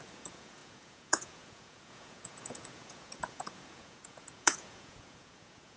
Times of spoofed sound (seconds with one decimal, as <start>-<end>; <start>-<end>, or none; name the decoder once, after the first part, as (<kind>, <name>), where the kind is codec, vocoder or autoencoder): 0.0-5.8 (vocoder, Vocos)